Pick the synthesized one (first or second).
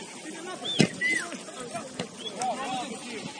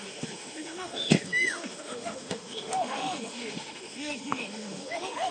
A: second